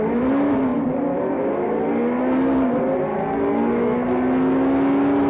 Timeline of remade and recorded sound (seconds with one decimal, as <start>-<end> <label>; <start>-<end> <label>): 0.0-3.1 recorded; 3.1-4.1 remade; 4.1-5.3 recorded